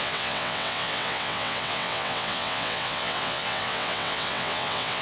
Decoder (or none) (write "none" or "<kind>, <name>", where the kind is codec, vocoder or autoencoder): vocoder, WaveNeXt